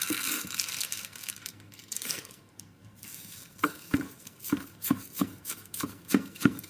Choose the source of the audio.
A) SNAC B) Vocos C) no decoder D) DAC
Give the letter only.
A